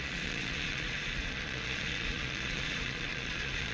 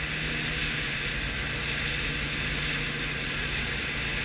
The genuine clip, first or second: second